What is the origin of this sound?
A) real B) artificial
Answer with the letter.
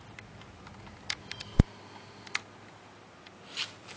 A